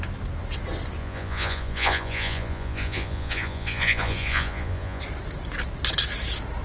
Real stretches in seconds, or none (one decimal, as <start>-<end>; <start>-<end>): 0.0-1.0; 5.0-6.6